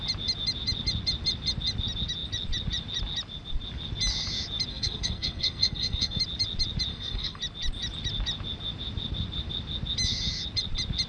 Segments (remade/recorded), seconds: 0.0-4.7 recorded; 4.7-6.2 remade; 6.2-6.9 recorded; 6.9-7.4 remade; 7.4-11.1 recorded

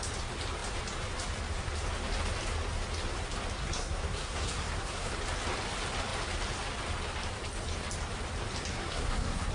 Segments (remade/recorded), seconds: 0.0-3.6 recorded; 3.6-5.1 remade; 5.1-8.7 recorded; 8.7-9.5 remade

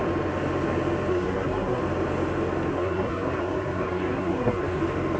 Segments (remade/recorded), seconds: 0.0-1.1 recorded; 1.1-1.8 remade; 1.8-2.7 recorded; 2.7-4.8 remade; 4.8-5.2 recorded

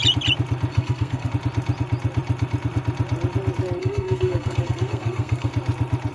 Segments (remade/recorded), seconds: 0.0-0.7 recorded; 0.7-1.3 remade; 1.3-3.8 recorded; 3.8-5.5 remade; 5.5-6.1 recorded

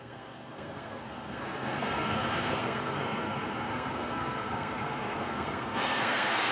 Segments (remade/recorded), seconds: 0.0-6.5 remade